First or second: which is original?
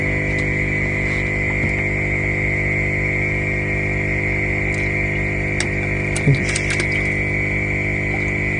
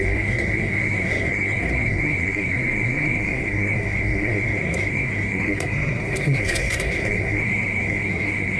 first